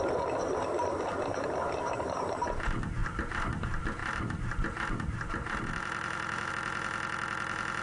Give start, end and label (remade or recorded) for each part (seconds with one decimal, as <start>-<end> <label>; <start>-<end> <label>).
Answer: 0.0-1.3 recorded; 1.3-2.4 remade; 2.4-3.0 recorded; 3.0-3.5 remade; 3.5-4.0 recorded; 4.0-6.5 remade; 6.5-7.8 recorded

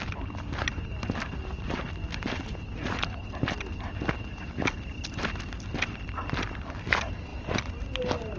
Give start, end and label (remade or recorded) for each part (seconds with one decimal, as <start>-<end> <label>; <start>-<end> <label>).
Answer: 0.0-8.4 recorded

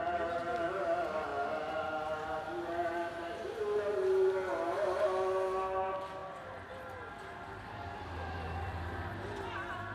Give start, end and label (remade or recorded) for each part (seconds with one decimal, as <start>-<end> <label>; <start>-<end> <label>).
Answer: 0.0-1.3 remade; 1.3-3.2 recorded; 3.2-6.2 remade; 6.2-7.2 recorded; 7.2-9.9 remade

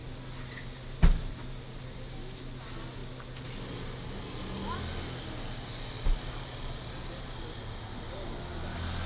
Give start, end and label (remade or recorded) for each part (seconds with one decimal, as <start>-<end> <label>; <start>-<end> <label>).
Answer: 0.0-9.1 recorded

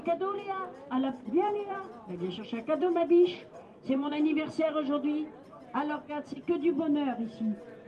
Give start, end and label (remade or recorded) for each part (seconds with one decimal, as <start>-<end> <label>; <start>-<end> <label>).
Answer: 0.0-0.7 recorded; 0.7-4.1 remade; 4.1-7.9 recorded

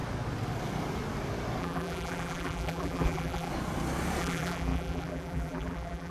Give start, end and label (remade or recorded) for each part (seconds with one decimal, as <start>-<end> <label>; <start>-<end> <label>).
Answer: 0.0-1.6 recorded; 1.6-3.5 remade; 3.5-4.2 recorded; 4.2-6.1 remade

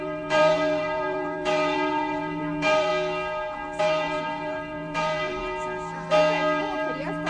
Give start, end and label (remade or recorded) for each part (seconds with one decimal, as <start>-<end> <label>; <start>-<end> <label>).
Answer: 0.0-2.9 remade; 2.9-3.8 recorded; 3.8-5.4 remade; 5.4-6.6 recorded; 6.6-7.3 remade